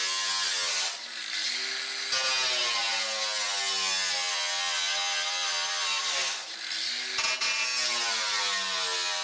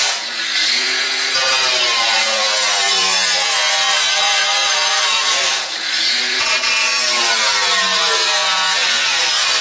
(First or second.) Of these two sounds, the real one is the first